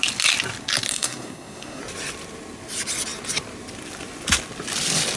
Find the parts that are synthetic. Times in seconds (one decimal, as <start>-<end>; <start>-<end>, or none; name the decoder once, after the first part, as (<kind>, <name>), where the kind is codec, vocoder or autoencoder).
0.9-1.8 (codec, SNAC)